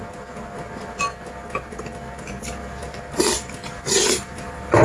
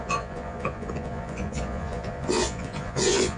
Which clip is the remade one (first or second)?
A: second